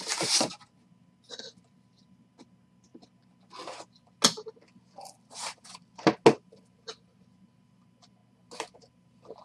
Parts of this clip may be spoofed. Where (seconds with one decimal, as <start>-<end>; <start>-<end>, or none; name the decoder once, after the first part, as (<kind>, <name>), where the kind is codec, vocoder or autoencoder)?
none